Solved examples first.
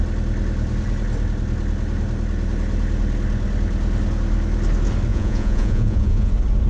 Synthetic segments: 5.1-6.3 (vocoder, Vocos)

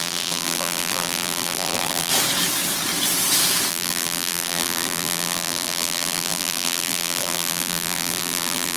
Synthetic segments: 0.0-2.1 (vocoder, BigVGAN v2); 3.7-8.8